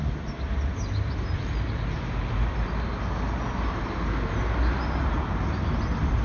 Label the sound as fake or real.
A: real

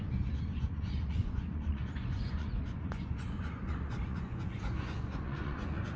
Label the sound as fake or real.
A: fake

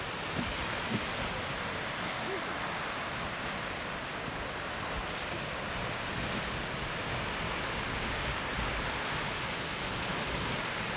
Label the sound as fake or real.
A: real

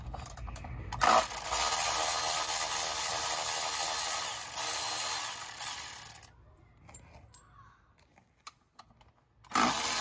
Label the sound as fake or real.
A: real